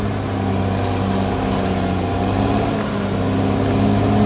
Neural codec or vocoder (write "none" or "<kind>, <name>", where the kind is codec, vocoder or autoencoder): none